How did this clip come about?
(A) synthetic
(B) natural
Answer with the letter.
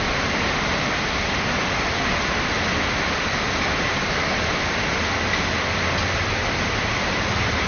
B